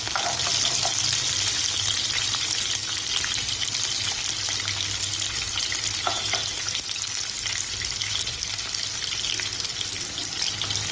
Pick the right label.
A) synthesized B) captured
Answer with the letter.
B